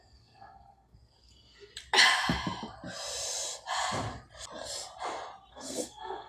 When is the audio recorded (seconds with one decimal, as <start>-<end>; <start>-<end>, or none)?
1.7-5.5